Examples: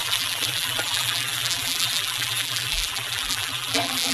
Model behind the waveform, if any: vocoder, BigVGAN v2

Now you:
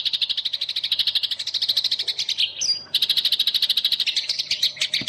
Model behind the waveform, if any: none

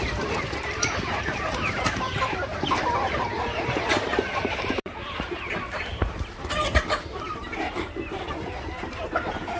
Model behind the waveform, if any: vocoder, BigVGAN v2